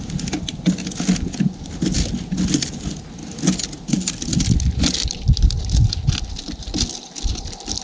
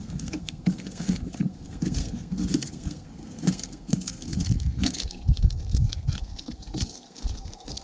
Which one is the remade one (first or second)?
second